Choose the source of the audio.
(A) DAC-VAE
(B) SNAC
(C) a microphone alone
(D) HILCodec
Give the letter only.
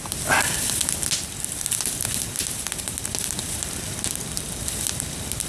C